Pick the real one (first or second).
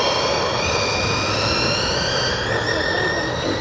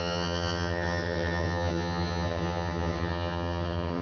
first